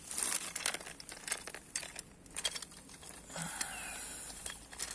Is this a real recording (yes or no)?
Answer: yes